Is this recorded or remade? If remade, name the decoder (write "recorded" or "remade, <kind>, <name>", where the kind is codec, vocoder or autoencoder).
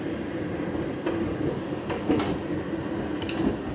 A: recorded